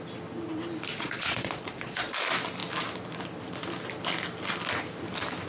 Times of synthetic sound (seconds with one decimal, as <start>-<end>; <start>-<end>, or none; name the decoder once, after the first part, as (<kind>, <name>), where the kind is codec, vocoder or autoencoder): 0.9-2.1 (vocoder, Vocos)